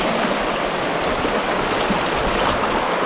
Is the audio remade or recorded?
recorded